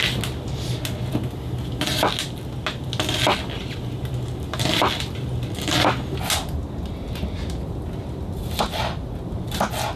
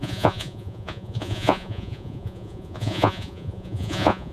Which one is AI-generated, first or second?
second